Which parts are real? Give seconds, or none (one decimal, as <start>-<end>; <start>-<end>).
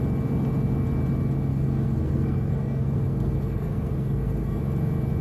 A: 0.0-1.5; 4.6-5.2